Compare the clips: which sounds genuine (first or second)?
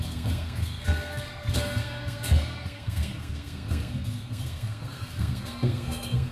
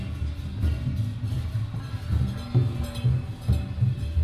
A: second